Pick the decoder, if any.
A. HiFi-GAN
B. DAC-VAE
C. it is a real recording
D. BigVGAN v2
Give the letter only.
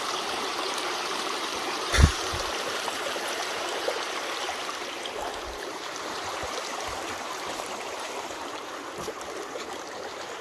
D